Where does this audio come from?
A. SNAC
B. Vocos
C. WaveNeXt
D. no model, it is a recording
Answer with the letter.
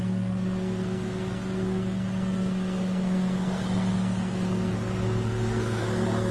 A